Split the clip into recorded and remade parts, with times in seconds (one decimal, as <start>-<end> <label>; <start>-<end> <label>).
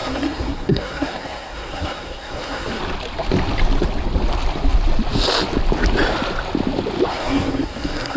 0.0-2.8 remade; 2.8-7.1 recorded; 7.1-8.2 remade